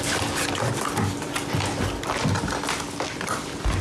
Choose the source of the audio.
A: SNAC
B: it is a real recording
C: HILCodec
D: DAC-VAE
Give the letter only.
B